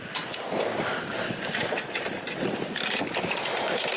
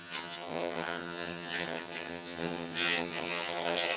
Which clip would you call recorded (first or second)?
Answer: first